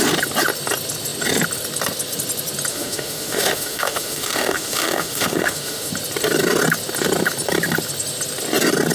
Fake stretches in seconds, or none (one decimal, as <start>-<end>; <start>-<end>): 2.7-5.9